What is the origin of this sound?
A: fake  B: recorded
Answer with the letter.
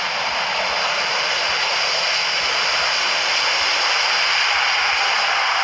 B